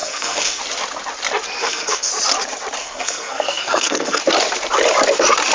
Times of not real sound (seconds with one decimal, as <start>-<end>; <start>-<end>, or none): 0.0-0.6; 1.6-2.1; 2.8-4.2